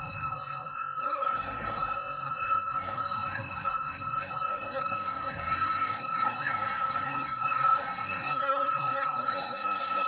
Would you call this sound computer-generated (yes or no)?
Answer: yes